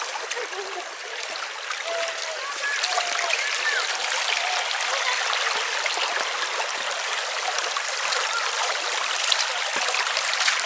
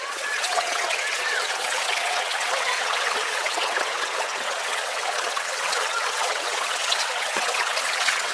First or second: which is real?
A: first